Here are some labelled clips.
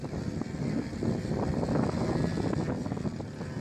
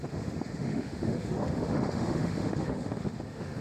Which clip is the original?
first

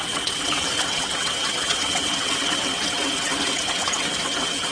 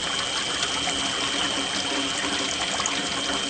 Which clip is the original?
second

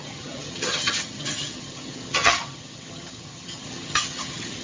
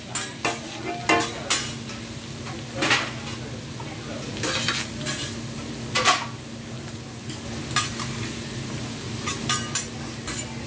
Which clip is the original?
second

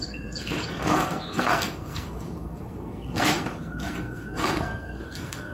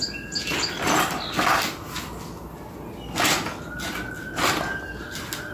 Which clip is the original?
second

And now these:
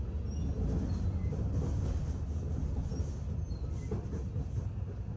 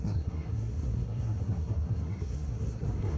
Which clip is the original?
first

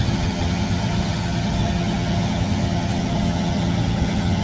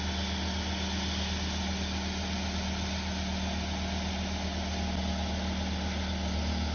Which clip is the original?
second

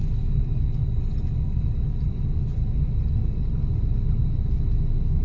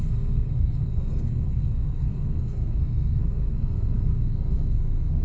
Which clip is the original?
first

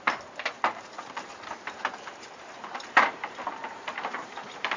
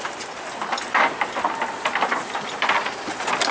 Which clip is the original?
second